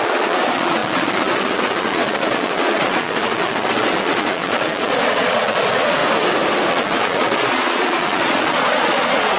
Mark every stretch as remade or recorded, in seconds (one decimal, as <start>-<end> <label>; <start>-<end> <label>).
0.0-6.0 remade; 6.0-6.7 recorded; 6.7-9.4 remade